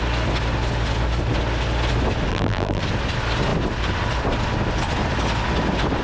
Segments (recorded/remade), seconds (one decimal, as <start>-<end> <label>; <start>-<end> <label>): 0.0-2.3 recorded; 2.3-2.8 remade; 2.8-6.0 recorded